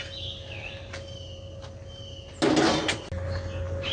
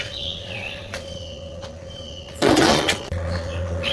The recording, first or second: first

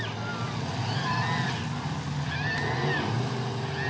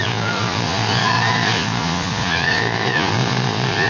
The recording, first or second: first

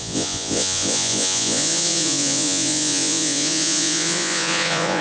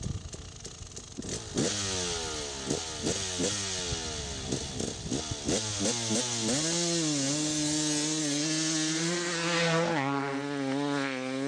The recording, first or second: second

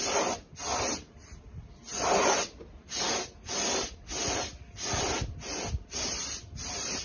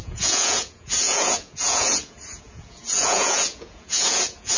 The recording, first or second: first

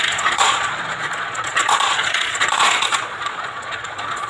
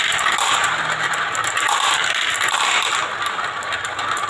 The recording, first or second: second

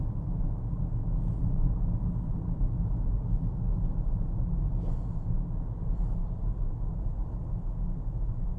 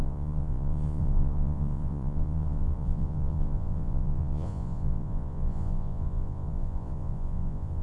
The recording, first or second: first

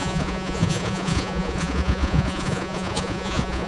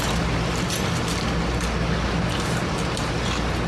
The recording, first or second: second